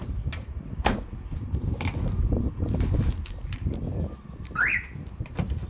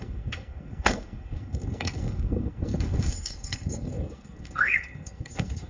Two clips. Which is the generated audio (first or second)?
second